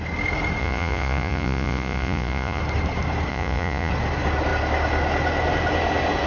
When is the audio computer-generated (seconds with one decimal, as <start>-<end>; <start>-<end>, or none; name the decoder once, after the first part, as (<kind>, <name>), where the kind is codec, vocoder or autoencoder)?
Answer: 0.6-2.6 (vocoder, Vocos); 3.3-3.9